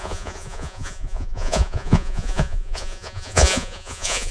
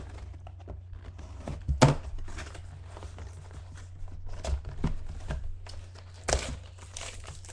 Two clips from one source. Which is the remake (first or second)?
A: first